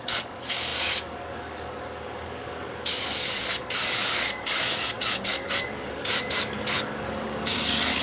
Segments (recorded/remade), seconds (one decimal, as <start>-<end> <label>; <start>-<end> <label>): 0.0-8.0 remade